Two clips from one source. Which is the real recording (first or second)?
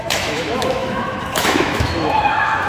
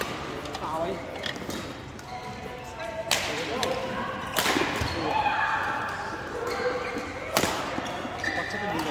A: second